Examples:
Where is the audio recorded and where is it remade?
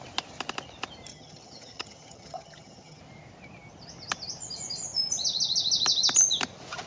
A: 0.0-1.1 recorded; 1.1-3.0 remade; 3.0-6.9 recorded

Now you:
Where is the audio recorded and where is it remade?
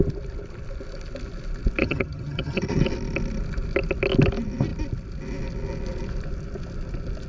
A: 0.0-1.8 recorded; 1.8-2.8 remade; 2.8-7.3 recorded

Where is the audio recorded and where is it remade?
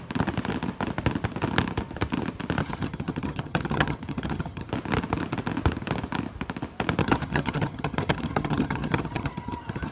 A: 0.0-2.6 recorded; 2.6-4.7 remade; 4.7-7.0 recorded; 7.0-9.9 remade